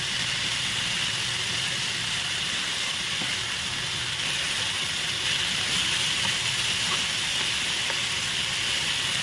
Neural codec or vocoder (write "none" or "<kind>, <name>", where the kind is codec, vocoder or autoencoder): none